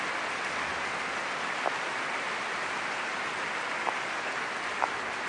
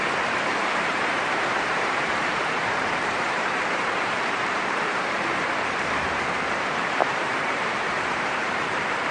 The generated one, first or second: second